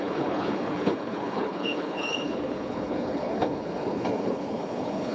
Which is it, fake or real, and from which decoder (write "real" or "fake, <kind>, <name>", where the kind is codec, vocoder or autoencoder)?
fake, codec, HILCodec